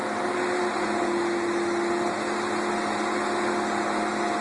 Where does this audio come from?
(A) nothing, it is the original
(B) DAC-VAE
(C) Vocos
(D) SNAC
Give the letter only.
A